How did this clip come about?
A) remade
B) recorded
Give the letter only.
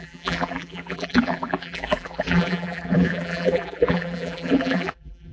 A